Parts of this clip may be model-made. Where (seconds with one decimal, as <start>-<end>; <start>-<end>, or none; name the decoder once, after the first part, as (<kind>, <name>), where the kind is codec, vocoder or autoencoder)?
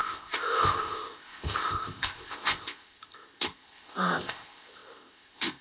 0.0-5.6 (codec, ZipCodec)